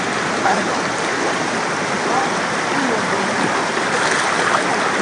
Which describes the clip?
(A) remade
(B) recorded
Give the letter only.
B